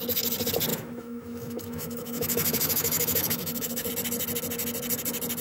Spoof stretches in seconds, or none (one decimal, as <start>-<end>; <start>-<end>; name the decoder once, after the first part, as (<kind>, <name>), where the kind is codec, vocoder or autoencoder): 0.7-3.9 (autoencoder, DAC-VAE)